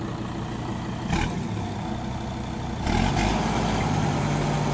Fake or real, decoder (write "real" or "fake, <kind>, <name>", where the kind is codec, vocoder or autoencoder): real